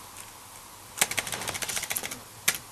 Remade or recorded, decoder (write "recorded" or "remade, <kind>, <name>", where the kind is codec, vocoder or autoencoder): recorded